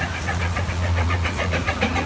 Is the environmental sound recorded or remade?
remade